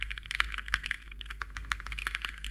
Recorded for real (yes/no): no